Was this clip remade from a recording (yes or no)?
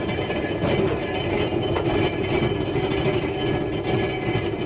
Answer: no